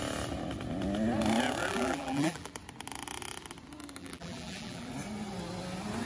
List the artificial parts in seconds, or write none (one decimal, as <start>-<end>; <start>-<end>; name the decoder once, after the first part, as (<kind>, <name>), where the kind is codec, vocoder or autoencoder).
1.6-2.5 (vocoder, BigVGAN v2); 4.0-4.9